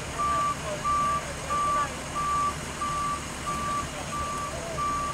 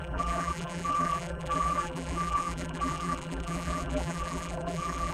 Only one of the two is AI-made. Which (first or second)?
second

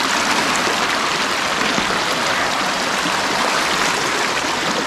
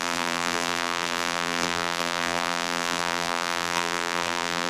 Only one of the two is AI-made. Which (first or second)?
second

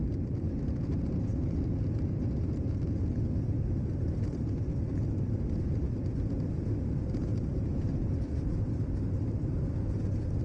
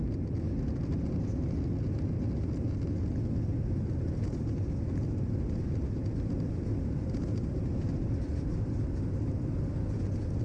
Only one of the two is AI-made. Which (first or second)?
first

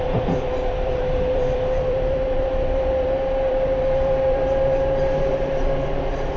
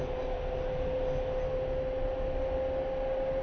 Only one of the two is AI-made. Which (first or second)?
first